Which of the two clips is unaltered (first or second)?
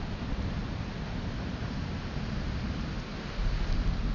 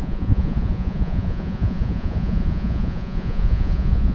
first